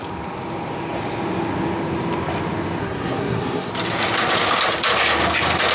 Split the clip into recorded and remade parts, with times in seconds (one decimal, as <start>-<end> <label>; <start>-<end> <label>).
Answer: 0.0-2.8 recorded; 2.8-3.7 remade; 3.7-5.7 recorded